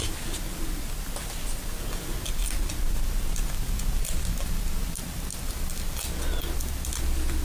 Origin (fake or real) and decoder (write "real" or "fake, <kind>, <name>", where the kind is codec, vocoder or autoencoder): real